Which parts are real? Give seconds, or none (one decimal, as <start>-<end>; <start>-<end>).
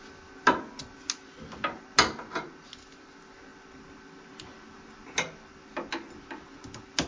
0.0-7.1